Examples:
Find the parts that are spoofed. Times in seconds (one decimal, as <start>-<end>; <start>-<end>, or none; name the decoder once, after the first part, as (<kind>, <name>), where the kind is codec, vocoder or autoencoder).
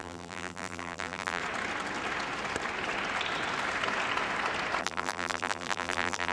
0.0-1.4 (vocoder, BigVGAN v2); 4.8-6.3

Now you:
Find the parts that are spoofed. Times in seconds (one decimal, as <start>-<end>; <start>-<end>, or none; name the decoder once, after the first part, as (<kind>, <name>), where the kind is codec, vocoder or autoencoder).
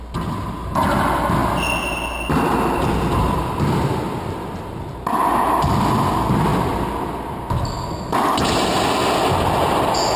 none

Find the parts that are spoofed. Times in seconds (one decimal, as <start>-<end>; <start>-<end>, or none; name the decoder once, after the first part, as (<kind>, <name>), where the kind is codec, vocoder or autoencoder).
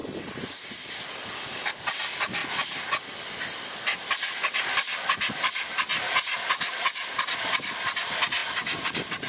0.0-1.7 (vocoder, BigVGAN v2); 8.4-9.3